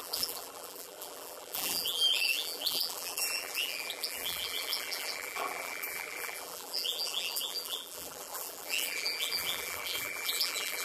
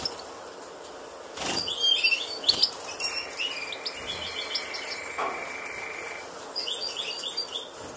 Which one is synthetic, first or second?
first